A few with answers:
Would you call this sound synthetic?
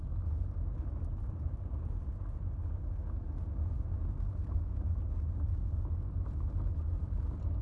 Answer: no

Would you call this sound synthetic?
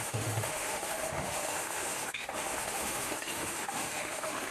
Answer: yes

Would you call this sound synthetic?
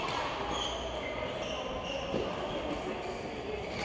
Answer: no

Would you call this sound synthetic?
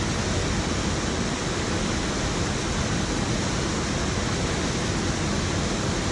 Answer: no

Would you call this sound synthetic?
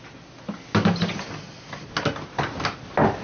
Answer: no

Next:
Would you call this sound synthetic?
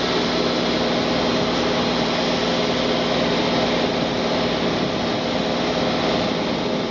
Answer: no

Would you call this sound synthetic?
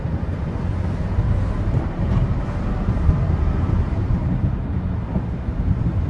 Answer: yes